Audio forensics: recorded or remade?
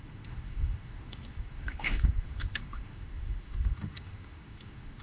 remade